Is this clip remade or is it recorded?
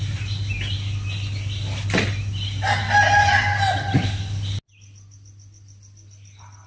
recorded